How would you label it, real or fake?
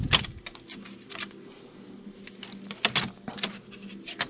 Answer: real